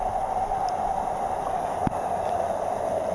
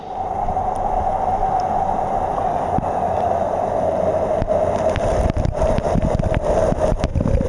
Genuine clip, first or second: second